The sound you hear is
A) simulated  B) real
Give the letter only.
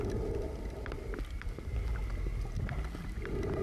B